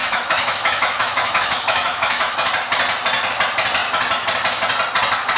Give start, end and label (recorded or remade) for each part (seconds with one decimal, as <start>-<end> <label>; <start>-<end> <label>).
0.0-2.5 remade; 2.5-5.4 recorded